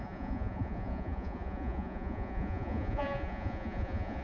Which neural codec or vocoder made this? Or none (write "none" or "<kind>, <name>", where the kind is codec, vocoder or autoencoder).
vocoder, Vocos